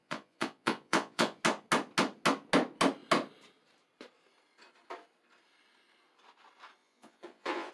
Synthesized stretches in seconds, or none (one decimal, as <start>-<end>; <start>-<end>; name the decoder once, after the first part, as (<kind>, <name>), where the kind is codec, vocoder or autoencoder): 0.0-1.4 (vocoder, Vocos); 6.8-7.7